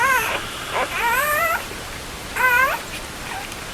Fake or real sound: fake